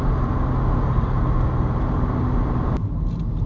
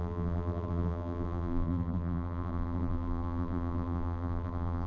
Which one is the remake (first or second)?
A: second